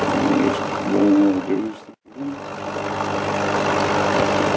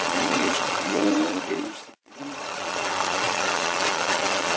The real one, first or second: first